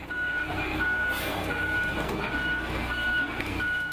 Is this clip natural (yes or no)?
no